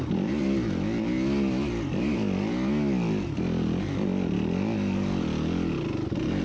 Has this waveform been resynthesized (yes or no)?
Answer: no